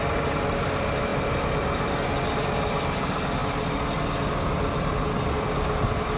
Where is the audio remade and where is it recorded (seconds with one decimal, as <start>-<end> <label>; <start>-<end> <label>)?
0.0-6.2 recorded

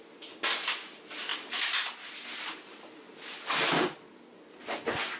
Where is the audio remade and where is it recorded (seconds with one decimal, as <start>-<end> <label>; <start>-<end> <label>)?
0.0-5.2 recorded

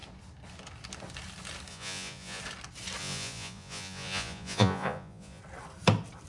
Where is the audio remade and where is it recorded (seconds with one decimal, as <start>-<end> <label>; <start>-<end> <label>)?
0.0-1.7 recorded; 1.7-2.4 remade; 2.4-3.0 recorded; 3.0-5.4 remade; 5.4-6.3 recorded

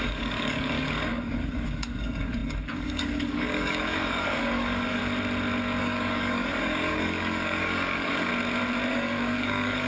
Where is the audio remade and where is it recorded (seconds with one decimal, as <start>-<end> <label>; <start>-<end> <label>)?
0.0-5.0 remade; 5.0-5.8 recorded; 5.8-8.3 remade; 8.3-8.9 recorded; 8.9-9.9 remade

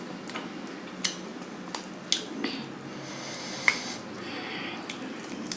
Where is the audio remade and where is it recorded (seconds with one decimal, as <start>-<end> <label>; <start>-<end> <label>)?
0.0-5.6 recorded

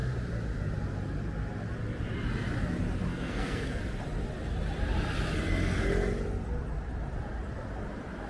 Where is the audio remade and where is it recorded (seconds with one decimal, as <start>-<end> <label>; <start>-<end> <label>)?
0.0-3.1 recorded; 3.1-3.8 remade; 3.8-8.3 recorded

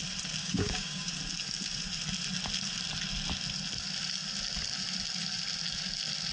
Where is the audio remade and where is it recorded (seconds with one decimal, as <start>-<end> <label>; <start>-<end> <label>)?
0.0-0.4 recorded; 0.4-1.1 remade; 1.1-6.3 recorded